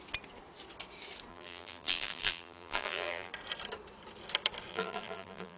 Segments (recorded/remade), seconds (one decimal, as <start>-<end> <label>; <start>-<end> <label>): 0.0-1.3 recorded; 1.3-3.3 remade; 3.3-4.7 recorded; 4.7-5.6 remade